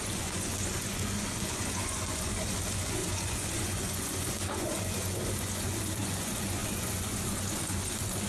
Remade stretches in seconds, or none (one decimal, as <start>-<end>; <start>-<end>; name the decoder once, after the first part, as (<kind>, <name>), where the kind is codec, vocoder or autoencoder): 0.0-8.3 (vocoder, Vocos)